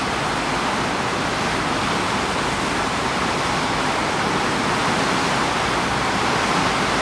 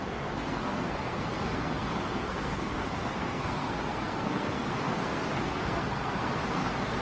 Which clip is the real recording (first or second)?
first